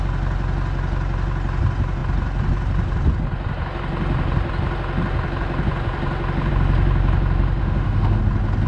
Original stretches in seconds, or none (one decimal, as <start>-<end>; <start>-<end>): 0.0-7.6; 8.2-8.7